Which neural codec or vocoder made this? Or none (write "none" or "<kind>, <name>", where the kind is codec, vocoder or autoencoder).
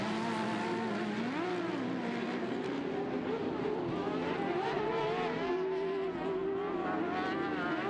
none